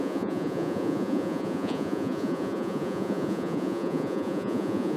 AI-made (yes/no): yes